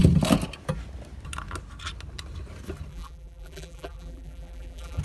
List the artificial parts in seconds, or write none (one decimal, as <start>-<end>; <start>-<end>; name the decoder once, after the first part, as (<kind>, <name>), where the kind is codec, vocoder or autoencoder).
2.9-5.0 (vocoder, BigVGAN v2)